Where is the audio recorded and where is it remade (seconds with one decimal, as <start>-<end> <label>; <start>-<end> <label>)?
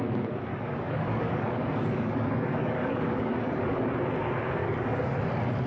0.0-0.5 recorded; 0.5-3.9 remade; 3.9-4.6 recorded; 4.6-5.2 remade; 5.2-5.7 recorded